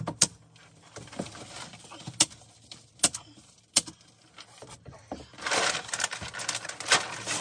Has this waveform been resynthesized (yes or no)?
no